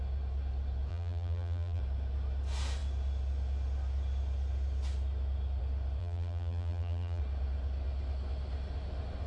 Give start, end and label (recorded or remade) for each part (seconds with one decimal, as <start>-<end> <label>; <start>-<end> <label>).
0.0-0.9 recorded; 0.9-1.8 remade; 1.8-6.0 recorded; 6.0-7.2 remade; 7.2-9.3 recorded